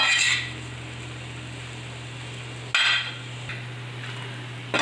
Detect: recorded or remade recorded